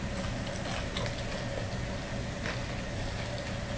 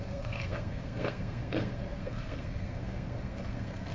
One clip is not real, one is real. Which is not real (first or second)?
second